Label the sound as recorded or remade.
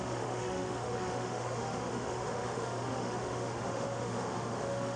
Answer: remade